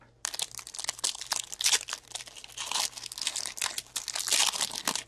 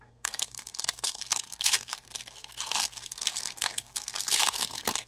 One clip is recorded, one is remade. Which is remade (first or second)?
second